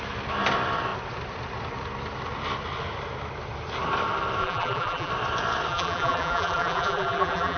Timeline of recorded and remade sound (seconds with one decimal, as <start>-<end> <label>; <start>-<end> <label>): 0.0-4.4 recorded; 4.4-5.1 remade; 5.1-5.7 recorded; 5.7-7.6 remade